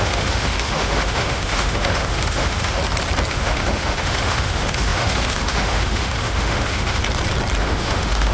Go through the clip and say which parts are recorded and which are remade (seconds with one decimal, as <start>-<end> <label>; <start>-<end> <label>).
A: 0.0-2.8 remade; 2.8-3.3 recorded; 3.3-7.0 remade; 7.0-7.6 recorded; 7.6-8.3 remade